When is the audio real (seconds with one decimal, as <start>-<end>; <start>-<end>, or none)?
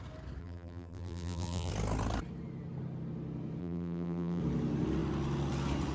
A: 0.0-0.4; 1.7-3.6; 4.4-5.9